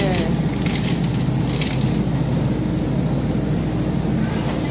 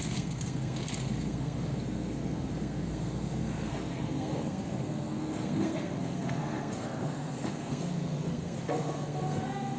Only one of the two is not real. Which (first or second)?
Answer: second